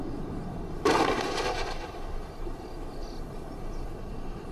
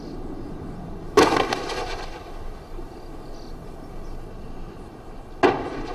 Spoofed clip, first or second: first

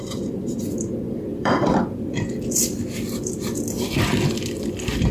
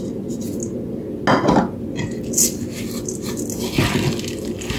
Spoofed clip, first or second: first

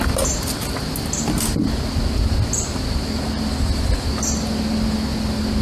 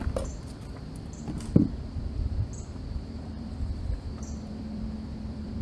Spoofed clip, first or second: second